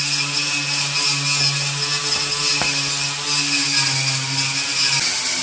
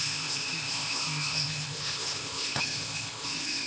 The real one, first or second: first